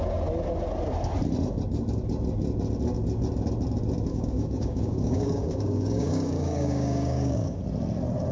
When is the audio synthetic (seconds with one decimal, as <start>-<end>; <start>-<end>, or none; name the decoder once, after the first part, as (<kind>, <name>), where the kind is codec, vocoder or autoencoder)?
4.1-7.6 (codec, DAC)